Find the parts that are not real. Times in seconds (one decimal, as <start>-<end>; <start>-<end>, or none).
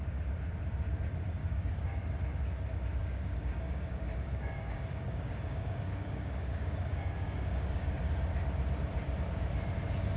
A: 1.4-2.0; 3.0-8.0